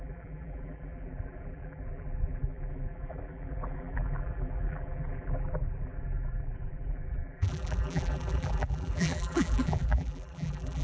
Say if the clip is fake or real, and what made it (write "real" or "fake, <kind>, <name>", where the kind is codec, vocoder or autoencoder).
fake, vocoder, BigVGAN v2